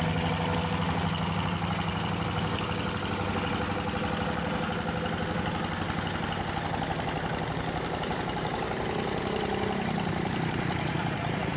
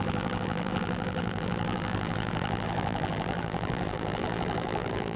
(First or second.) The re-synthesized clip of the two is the second